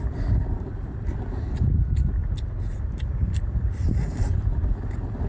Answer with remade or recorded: remade